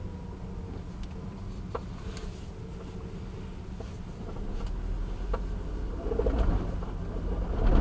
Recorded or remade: recorded